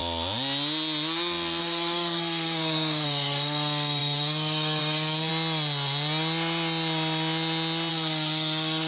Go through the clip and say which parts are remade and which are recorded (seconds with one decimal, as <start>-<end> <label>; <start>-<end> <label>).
0.0-1.6 recorded; 1.6-5.3 remade; 5.3-7.9 recorded; 7.9-8.9 remade

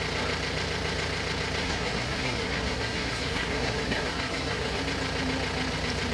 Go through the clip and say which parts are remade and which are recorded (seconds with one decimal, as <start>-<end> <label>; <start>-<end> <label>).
0.0-1.6 recorded; 1.6-4.8 remade; 4.8-6.1 recorded

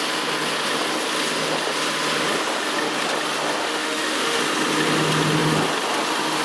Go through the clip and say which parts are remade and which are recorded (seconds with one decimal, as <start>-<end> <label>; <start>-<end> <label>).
0.0-3.6 recorded; 3.6-4.4 remade; 4.4-6.4 recorded

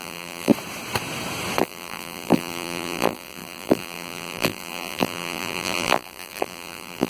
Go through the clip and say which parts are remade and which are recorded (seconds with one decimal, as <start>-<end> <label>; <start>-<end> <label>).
0.0-0.5 remade; 0.5-1.6 recorded; 1.6-7.1 remade